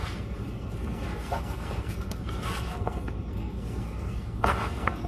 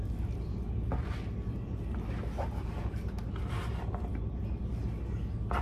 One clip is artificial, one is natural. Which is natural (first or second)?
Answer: second